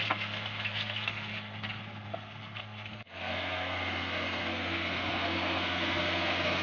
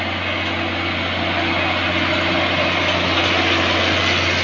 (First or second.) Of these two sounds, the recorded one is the second